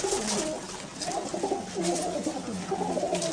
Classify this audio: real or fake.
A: real